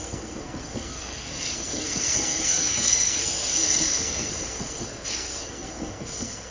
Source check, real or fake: fake